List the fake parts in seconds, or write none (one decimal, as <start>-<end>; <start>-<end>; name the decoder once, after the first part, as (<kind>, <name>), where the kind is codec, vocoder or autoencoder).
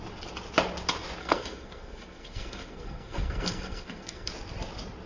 1.2-4.3 (codec, SNAC)